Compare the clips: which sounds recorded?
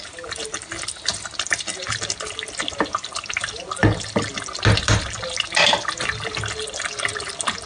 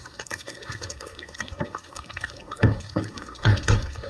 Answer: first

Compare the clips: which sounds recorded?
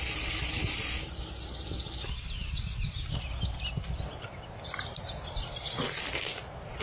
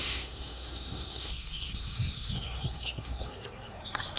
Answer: first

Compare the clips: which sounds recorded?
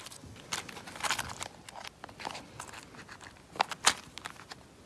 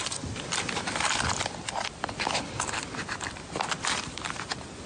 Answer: first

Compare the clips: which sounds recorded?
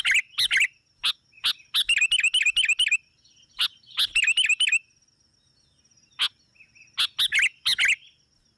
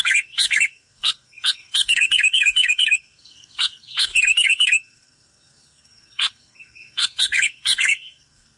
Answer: first